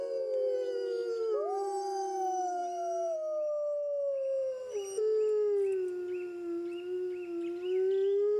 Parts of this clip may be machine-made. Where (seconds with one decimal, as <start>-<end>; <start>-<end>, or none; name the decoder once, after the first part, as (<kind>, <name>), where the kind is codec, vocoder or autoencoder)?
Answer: none